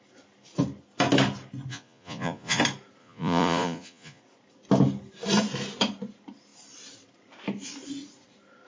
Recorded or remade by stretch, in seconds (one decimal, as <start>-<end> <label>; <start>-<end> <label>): 0.0-1.7 recorded; 1.7-2.6 remade; 2.6-3.0 recorded; 3.0-4.2 remade; 4.2-8.7 recorded